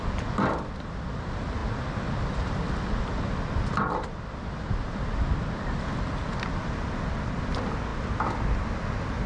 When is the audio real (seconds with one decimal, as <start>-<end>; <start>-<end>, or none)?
0.0-9.3